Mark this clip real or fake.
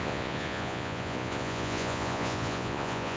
fake